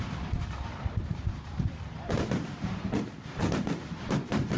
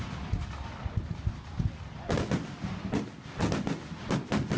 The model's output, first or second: first